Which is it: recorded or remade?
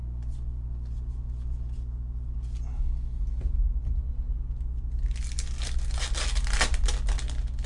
recorded